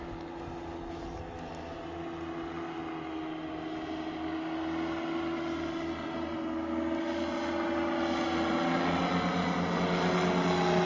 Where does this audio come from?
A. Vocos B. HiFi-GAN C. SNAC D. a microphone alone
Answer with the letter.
D